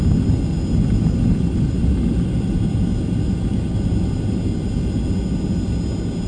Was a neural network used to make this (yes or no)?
no